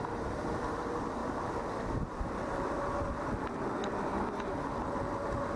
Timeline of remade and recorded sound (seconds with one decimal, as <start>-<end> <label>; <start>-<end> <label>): 0.0-5.6 recorded

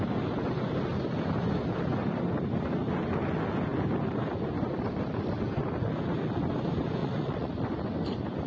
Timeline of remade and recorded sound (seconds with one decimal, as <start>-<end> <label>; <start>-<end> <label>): 0.0-7.0 recorded; 7.0-7.5 remade; 7.5-8.5 recorded

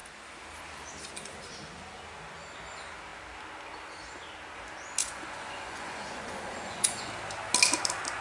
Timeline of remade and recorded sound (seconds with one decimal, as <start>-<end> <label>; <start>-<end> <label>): 0.0-5.0 recorded; 5.0-7.1 remade; 7.1-8.2 recorded